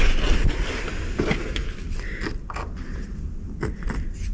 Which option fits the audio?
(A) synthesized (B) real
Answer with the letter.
B